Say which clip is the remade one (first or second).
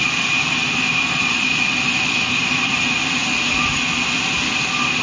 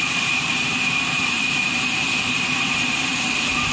second